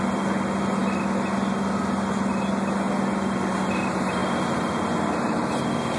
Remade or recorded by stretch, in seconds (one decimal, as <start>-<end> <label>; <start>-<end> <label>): 0.0-6.0 recorded